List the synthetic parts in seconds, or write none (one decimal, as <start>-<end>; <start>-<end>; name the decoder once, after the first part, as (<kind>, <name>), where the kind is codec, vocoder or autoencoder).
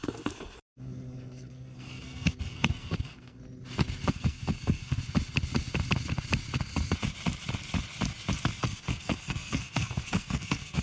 0.0-3.4 (codec, SNAC); 4.1-5.0; 8.6-10.8